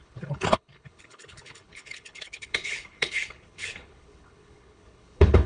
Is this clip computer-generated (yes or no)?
yes